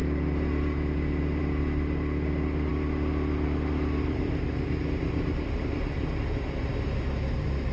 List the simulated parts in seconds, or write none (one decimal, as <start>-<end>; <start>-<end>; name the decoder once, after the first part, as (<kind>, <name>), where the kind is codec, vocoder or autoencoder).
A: none